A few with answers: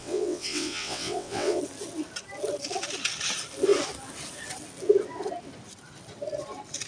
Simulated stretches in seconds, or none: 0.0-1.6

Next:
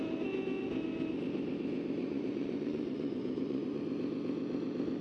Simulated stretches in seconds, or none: 2.0-3.8

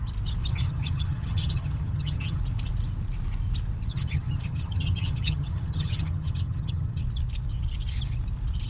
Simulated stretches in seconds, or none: 0.5-2.4; 3.9-7.0

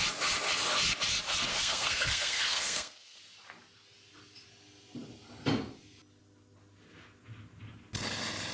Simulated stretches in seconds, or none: 1.5-3.2

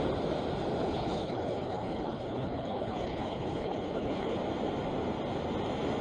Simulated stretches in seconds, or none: 0.8-4.4

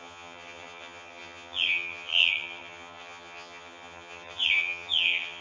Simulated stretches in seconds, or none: 0.0-5.4